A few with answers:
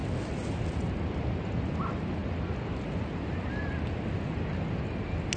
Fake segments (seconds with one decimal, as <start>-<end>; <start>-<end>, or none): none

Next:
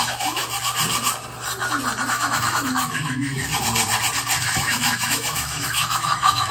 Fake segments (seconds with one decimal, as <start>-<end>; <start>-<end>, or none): 0.0-0.4; 2.1-3.5; 4.4-6.5

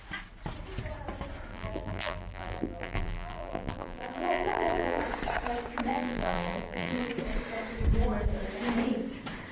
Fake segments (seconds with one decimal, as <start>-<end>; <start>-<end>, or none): 1.5-5.0; 5.9-7.1

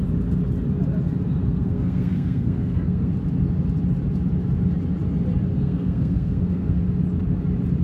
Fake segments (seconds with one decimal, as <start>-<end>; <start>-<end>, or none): 1.4-3.1; 5.5-6.8

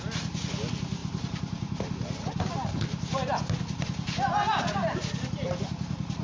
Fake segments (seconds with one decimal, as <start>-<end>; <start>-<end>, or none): 1.0-2.2

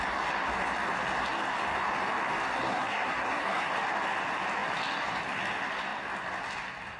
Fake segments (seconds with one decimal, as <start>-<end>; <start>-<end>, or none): 2.7-3.7

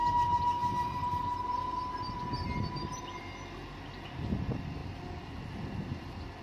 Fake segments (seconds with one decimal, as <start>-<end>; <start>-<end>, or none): none

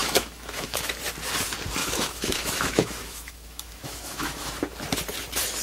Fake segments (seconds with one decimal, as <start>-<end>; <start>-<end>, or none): 0.0-1.0; 1.8-4.5